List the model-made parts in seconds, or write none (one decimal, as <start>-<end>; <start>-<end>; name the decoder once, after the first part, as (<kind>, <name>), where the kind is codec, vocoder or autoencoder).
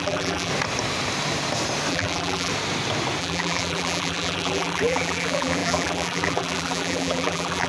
0.0-0.5 (vocoder, BigVGAN v2); 1.9-2.5; 3.2-7.7